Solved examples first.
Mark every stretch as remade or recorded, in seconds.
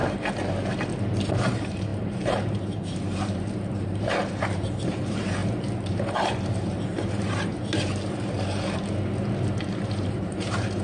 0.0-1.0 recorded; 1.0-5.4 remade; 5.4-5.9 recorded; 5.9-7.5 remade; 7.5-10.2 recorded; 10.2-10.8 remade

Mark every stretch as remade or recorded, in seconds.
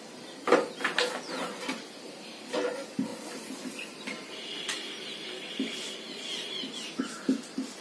0.0-3.1 recorded; 3.1-7.0 remade; 7.0-7.8 recorded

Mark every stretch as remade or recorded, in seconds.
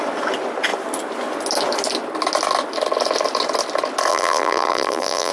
0.0-4.1 recorded; 4.1-5.3 remade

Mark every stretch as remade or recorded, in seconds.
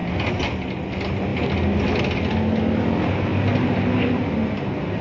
0.0-5.0 recorded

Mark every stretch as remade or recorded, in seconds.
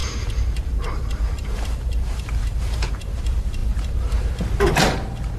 0.0-3.2 remade; 3.2-5.4 recorded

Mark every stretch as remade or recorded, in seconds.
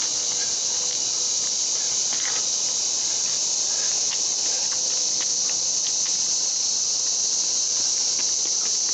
0.0-1.0 recorded; 1.0-4.3 remade; 4.3-7.4 recorded; 7.4-8.9 remade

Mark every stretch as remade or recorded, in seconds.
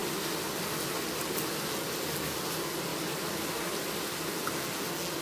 0.0-2.9 recorded; 2.9-4.4 remade; 4.4-5.2 recorded